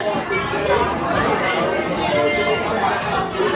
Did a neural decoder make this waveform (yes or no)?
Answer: no